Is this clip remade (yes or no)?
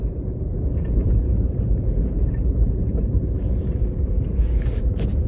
yes